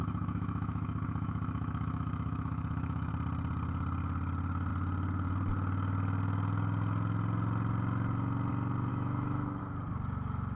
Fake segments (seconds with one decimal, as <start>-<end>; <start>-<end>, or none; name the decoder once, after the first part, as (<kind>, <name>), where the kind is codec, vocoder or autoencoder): 0.0-3.1 (autoencoder, DAC-VAE); 8.9-9.6

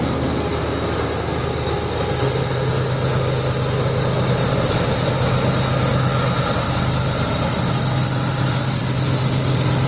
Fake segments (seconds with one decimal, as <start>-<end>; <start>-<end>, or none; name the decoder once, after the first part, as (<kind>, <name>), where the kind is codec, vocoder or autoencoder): none

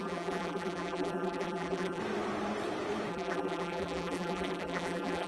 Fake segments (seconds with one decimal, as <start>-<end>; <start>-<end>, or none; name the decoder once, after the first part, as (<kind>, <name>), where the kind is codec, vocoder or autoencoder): 0.0-2.0 (vocoder, BigVGAN v2); 3.1-5.3